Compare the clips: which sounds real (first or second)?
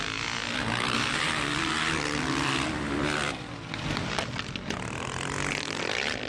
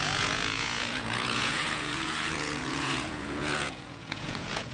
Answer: first